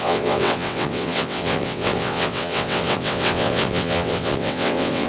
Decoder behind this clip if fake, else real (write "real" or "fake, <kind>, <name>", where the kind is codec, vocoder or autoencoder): fake, vocoder, WaveNeXt